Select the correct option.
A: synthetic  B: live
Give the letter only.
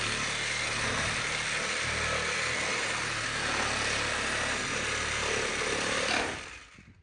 B